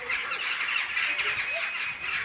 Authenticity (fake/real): real